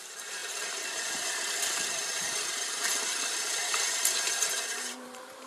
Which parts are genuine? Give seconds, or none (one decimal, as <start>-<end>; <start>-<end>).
none